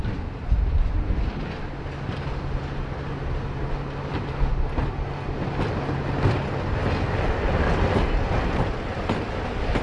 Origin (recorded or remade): recorded